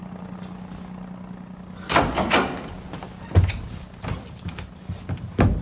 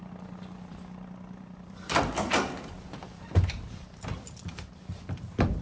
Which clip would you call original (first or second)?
first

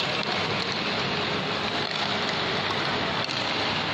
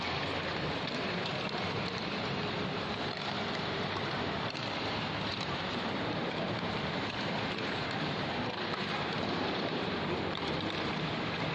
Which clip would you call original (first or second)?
first